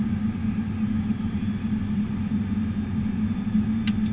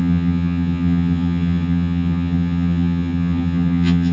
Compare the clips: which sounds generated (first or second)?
second